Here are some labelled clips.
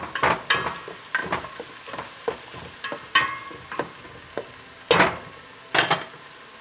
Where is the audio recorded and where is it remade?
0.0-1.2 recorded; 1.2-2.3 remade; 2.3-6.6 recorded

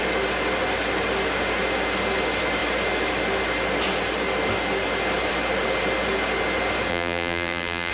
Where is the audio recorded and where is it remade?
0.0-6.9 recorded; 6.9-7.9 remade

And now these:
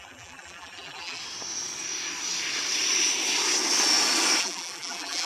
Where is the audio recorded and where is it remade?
0.0-1.2 remade; 1.2-4.4 recorded; 4.4-5.3 remade

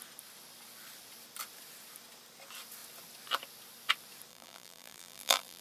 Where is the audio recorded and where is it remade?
0.0-4.3 recorded; 4.3-5.6 remade